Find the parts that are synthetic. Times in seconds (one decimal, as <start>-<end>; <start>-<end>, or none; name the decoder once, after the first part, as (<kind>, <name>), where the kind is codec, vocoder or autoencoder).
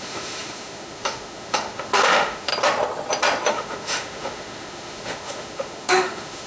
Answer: 0.0-2.5 (autoencoder, DAC-VAE); 3.5-6.5